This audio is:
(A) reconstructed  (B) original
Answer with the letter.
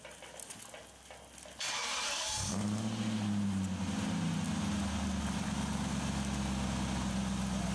B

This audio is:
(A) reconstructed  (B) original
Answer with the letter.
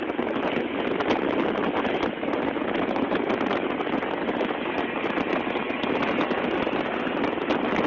B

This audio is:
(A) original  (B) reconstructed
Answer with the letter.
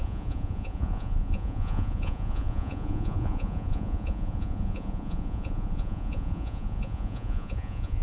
B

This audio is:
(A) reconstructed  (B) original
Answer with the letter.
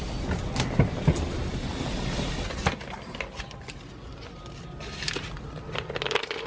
B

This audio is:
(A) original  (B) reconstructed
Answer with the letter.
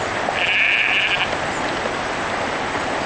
A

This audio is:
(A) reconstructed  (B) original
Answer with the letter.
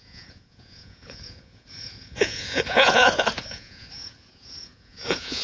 A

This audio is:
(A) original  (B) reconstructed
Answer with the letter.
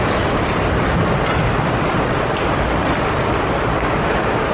A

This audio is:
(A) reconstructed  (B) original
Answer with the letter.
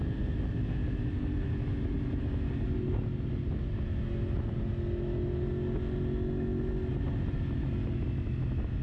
B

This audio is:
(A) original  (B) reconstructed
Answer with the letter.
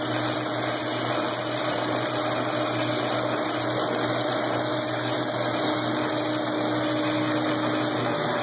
A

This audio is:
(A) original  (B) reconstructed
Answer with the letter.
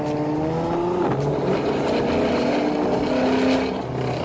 A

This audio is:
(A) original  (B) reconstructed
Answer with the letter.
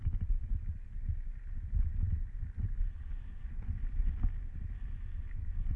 A